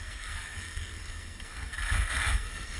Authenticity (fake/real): fake